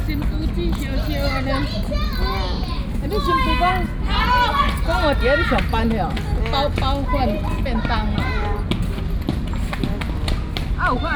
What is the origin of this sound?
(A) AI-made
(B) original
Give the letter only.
B